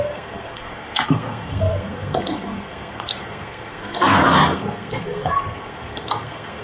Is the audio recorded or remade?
remade